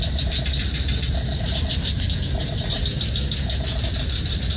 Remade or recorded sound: recorded